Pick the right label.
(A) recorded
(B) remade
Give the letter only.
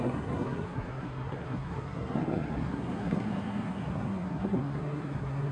B